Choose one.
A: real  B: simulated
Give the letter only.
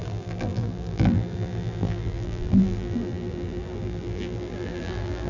B